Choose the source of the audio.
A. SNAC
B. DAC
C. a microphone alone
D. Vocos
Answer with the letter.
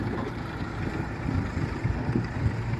C